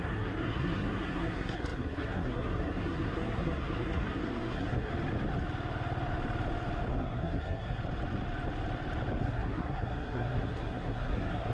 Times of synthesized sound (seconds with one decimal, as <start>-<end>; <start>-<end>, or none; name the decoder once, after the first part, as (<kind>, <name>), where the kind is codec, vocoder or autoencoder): 0.0-4.9 (codec, SNAC); 6.9-7.8; 9.2-11.5